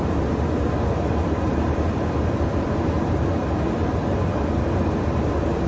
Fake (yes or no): no